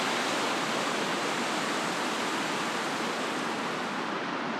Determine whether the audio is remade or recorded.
recorded